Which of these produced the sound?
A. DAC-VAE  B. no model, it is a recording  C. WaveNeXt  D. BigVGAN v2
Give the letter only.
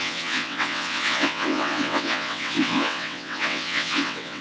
C